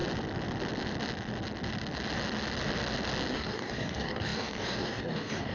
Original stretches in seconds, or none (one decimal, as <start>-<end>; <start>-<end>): 0.0-3.3